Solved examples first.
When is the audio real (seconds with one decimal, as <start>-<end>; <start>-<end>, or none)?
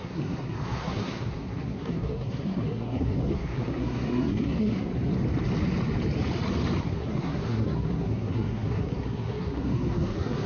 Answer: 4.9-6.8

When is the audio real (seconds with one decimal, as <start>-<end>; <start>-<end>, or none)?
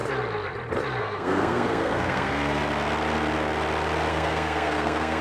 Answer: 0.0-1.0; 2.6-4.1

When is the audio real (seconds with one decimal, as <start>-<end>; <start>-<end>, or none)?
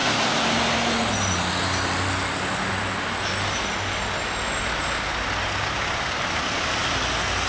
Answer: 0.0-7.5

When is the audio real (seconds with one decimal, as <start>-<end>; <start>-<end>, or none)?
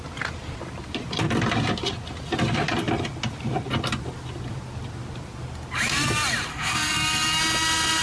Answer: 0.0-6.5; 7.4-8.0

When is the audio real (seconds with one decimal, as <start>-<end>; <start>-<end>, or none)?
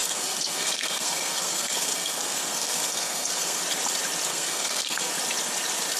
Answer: 3.6-4.3; 5.1-6.0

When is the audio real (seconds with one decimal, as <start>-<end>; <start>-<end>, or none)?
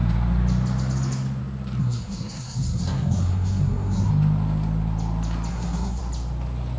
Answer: 0.0-1.8; 4.1-5.5; 6.0-6.8